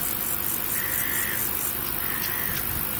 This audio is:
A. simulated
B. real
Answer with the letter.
B